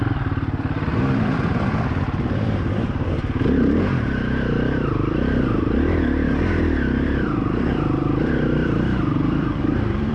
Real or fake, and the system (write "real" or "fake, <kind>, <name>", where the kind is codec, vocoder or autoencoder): fake, vocoder, BigVGAN v2